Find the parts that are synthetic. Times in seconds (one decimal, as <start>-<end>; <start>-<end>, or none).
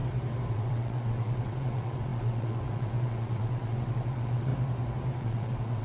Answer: 0.5-4.5; 5.2-5.8